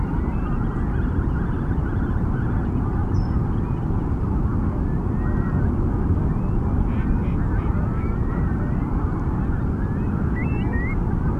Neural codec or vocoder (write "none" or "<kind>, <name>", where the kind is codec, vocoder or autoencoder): none